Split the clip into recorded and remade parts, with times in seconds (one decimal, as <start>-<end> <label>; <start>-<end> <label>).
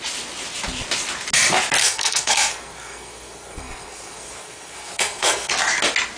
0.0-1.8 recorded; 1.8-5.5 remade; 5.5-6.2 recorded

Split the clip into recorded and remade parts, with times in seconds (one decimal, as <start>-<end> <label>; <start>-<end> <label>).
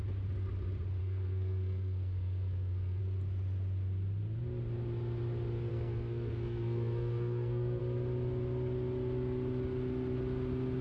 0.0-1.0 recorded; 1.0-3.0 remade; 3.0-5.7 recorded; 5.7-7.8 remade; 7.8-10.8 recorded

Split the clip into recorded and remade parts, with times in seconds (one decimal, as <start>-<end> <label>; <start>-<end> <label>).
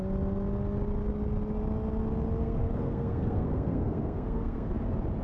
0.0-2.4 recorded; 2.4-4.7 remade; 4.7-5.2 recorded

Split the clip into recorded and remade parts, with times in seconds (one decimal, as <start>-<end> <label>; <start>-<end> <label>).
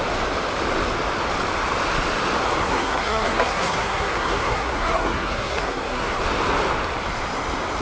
0.0-2.6 recorded; 2.6-6.2 remade; 6.2-7.8 recorded